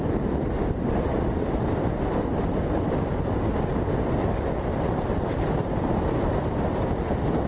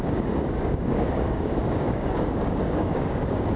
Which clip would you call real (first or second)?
first